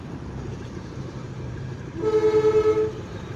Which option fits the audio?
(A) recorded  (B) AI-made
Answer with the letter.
B